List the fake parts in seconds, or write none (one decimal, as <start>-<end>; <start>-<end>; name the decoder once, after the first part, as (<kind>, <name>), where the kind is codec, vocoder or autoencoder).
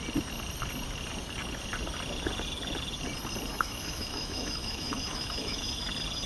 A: 3.5-5.8 (autoencoder, DAC-VAE)